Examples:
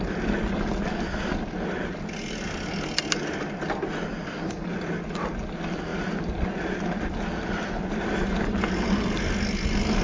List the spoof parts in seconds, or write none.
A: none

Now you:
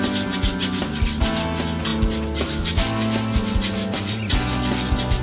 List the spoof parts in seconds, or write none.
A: none